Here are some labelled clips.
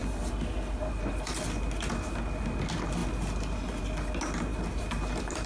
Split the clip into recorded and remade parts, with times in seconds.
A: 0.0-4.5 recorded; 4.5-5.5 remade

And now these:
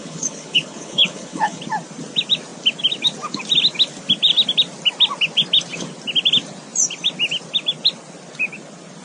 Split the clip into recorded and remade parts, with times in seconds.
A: 0.0-1.6 remade; 1.6-9.0 recorded

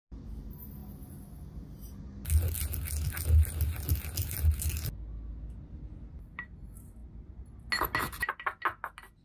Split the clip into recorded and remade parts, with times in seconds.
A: 0.0-9.2 recorded

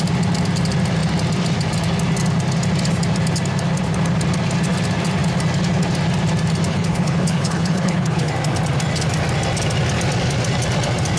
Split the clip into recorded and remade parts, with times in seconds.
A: 0.0-6.7 recorded; 6.7-8.3 remade; 8.3-11.2 recorded

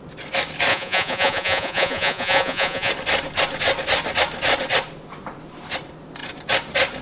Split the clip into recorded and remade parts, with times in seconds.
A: 0.0-0.7 recorded; 0.7-2.9 remade; 2.9-7.0 recorded